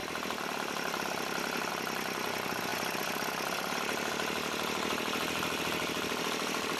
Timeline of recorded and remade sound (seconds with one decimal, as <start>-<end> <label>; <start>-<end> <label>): 0.0-1.7 remade; 1.7-6.8 recorded